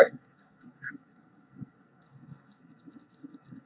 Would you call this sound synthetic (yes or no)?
yes